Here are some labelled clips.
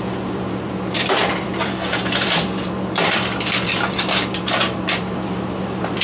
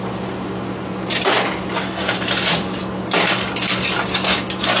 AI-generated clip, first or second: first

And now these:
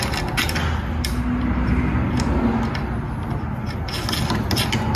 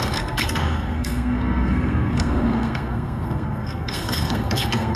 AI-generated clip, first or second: second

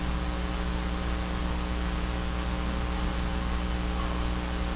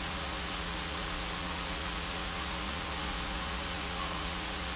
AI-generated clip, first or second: second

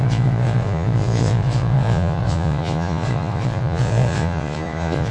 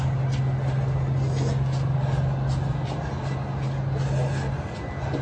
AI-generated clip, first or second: first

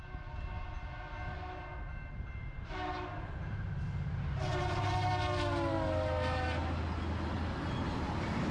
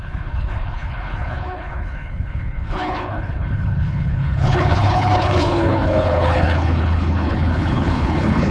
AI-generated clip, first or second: second